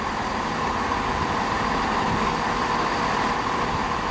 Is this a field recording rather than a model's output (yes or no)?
yes